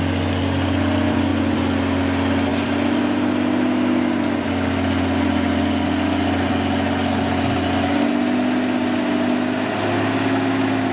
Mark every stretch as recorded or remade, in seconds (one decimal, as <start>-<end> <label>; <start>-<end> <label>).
0.0-10.9 recorded